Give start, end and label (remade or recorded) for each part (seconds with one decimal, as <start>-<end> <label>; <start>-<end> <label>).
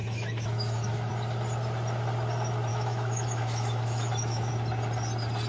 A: 0.0-1.1 remade; 1.1-2.7 recorded; 2.7-4.5 remade; 4.5-5.5 recorded